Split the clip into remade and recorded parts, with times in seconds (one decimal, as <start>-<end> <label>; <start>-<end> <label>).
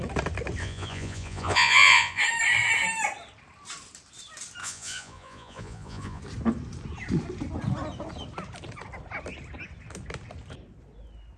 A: 0.0-0.6 recorded; 0.6-2.2 remade; 2.2-4.6 recorded; 4.6-6.2 remade; 6.2-11.4 recorded